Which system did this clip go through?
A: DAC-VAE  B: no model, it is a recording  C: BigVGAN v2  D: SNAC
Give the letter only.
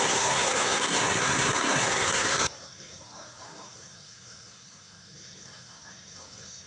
D